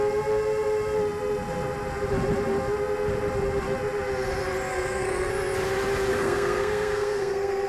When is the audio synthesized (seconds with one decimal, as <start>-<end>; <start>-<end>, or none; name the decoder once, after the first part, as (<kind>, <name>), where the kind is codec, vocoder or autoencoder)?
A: 4.7-5.3 (codec, SNAC); 6.1-7.7